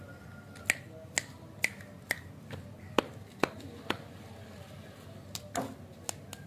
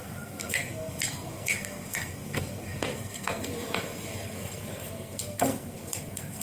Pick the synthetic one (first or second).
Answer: second